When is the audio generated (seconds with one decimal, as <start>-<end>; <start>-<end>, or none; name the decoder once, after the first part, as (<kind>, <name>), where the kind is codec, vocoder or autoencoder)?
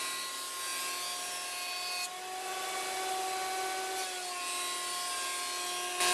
none